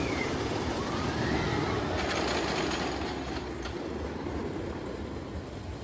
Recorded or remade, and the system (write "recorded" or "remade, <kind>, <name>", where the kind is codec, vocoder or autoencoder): recorded